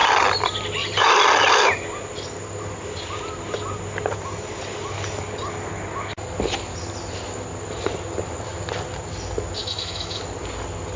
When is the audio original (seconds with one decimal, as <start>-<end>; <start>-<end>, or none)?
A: 0.0-9.6; 10.2-11.0